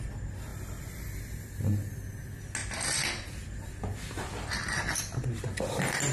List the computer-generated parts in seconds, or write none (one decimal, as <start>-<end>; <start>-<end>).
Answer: 0.5-1.2